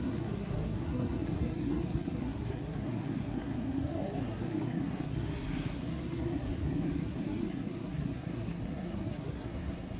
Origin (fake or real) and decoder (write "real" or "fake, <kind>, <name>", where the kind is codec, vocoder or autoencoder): fake, codec, SNAC